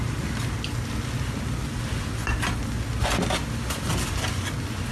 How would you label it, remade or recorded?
recorded